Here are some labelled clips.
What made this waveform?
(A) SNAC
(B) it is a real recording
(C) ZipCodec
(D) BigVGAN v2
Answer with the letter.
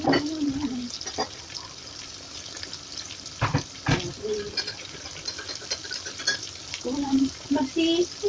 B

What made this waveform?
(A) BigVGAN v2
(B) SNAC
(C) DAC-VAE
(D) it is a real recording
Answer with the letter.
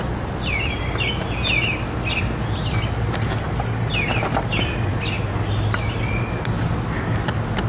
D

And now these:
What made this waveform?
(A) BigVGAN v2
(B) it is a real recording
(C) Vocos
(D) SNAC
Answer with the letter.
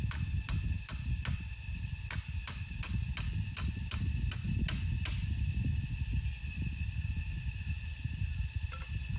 B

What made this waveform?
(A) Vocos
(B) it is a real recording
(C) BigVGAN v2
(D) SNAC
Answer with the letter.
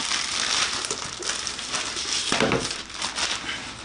B